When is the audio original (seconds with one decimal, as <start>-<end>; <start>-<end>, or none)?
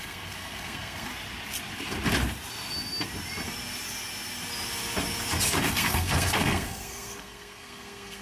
1.1-5.7